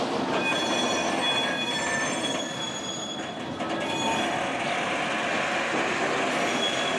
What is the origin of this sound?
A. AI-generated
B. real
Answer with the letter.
B